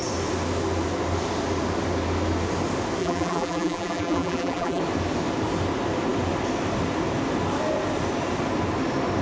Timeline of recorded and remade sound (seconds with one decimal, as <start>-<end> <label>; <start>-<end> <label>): 0.0-3.0 recorded; 3.0-4.8 remade; 4.8-9.2 recorded